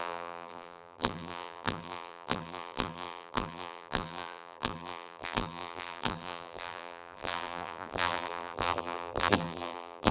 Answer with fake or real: fake